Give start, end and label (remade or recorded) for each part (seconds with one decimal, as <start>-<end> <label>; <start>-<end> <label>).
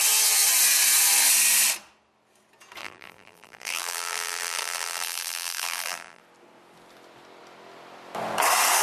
0.0-2.8 recorded; 2.8-6.2 remade; 6.2-8.8 recorded